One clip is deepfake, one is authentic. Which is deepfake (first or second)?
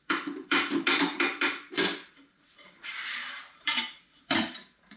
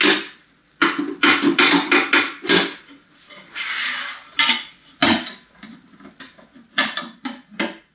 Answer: first